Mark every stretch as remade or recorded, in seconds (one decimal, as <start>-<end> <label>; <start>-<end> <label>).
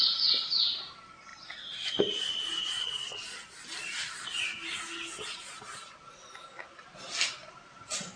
0.0-8.2 recorded